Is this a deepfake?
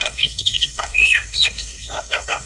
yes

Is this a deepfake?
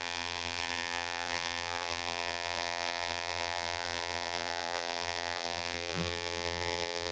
yes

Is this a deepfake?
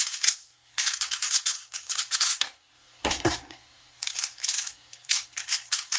yes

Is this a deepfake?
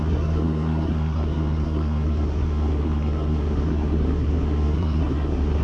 yes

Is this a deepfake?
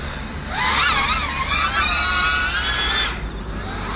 no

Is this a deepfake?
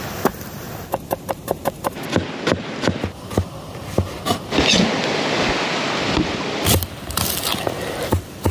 no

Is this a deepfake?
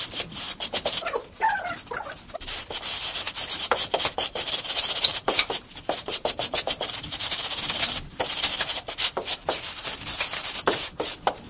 yes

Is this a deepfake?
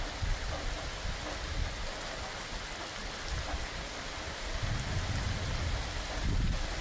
no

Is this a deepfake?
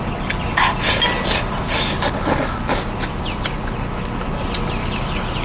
no